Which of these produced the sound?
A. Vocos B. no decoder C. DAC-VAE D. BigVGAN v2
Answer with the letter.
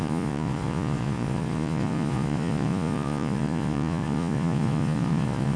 A